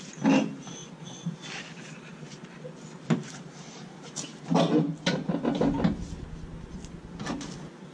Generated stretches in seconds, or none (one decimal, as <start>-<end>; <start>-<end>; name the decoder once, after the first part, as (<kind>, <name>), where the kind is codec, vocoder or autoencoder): none